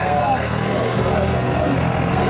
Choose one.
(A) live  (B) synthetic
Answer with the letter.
B